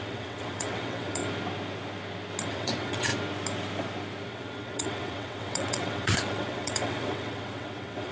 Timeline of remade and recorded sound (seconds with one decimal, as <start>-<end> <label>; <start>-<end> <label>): 0.0-1.2 remade; 1.2-2.5 recorded; 2.5-3.1 remade; 3.1-4.3 recorded; 4.3-8.1 remade